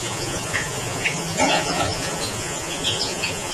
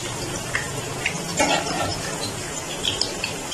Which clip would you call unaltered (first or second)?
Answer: second